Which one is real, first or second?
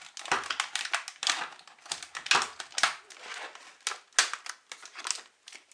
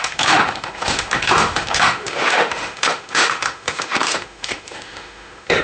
first